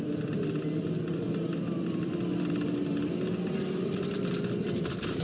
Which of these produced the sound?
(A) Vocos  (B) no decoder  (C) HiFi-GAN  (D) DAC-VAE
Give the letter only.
B